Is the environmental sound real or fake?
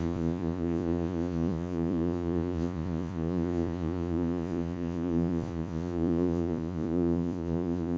fake